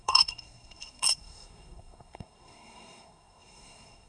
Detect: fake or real fake